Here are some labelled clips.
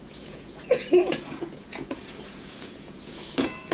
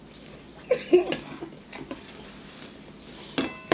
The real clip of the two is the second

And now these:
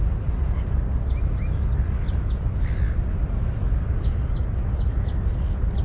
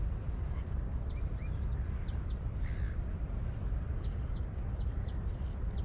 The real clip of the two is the first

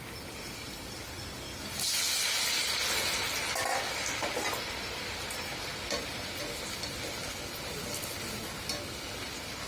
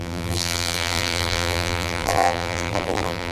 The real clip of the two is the first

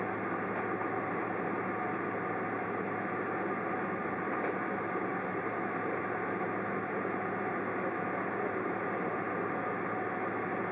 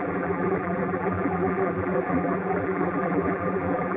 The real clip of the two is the first